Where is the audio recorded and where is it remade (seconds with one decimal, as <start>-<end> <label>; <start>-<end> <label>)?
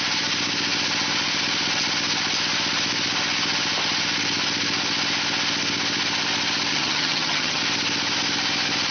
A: 0.0-6.7 recorded; 6.7-7.6 remade; 7.6-8.9 recorded